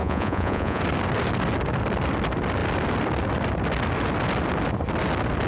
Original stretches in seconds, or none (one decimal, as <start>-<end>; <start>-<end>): 0.8-5.5